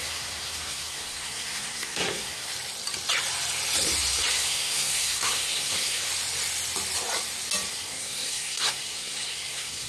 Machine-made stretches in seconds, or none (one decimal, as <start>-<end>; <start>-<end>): 0.0-2.5; 4.3-6.1; 7.7-9.9